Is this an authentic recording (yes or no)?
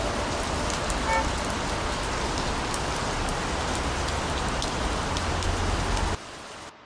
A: yes